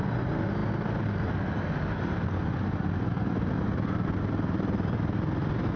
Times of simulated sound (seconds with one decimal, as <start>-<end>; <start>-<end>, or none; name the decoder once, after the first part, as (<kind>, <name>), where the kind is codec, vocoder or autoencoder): none